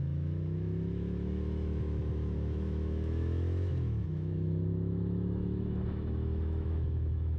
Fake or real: fake